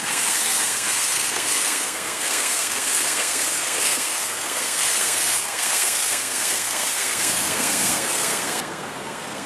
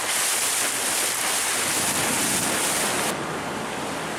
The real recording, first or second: second